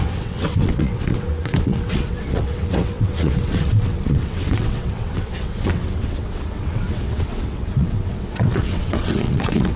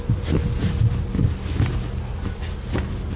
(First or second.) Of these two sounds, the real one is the second